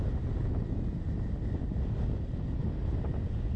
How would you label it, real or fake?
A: real